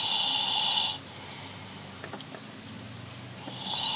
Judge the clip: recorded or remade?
recorded